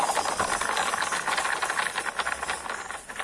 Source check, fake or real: real